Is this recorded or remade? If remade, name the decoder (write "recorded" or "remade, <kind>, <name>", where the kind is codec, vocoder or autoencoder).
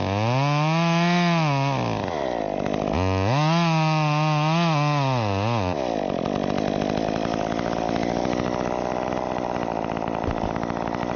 recorded